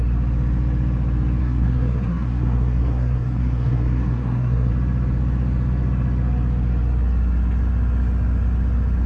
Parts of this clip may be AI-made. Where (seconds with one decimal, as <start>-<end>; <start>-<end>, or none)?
1.4-4.7